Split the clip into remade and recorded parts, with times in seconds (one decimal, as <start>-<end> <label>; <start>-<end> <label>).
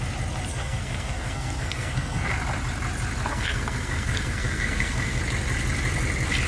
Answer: 0.0-0.5 recorded; 0.5-2.3 remade; 2.3-3.3 recorded; 3.3-5.2 remade; 5.2-6.5 recorded